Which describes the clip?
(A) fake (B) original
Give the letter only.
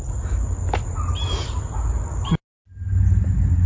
B